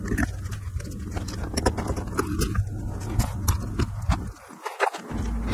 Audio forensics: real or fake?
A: real